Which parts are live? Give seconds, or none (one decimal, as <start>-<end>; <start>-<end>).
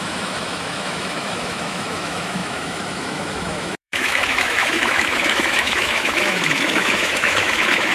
none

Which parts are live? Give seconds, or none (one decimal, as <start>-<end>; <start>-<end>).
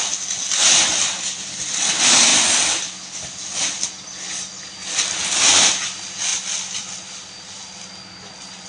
0.0-0.9; 1.6-6.3; 7.8-8.7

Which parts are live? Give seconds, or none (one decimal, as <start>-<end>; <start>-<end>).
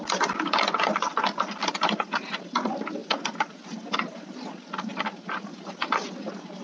0.0-6.6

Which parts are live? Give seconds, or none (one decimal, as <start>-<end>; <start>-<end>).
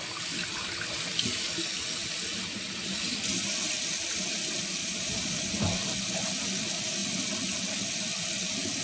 0.0-4.8; 5.4-8.8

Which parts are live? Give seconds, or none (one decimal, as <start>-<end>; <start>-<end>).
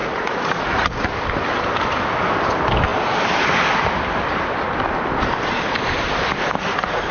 0.9-7.1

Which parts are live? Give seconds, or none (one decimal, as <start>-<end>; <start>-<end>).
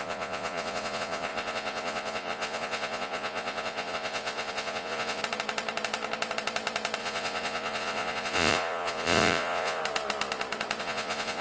5.2-7.0; 9.8-10.8